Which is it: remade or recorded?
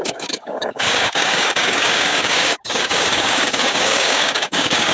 remade